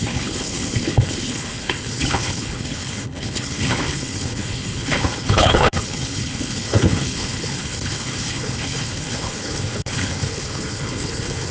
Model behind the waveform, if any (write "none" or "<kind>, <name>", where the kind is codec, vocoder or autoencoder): codec, HILCodec